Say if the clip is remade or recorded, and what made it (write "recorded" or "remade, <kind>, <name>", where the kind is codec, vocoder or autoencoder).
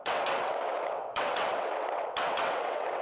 remade, vocoder, WaveNeXt